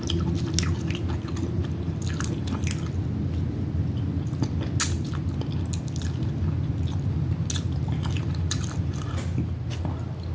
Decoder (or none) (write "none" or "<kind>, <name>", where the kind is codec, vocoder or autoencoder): none